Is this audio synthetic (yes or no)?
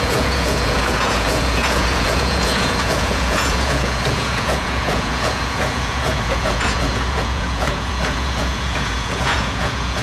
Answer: yes